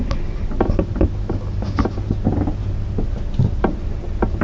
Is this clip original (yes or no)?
yes